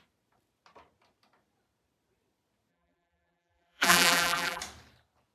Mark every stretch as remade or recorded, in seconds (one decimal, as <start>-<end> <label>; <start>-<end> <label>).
0.0-2.7 recorded; 2.7-4.6 remade; 4.6-5.3 recorded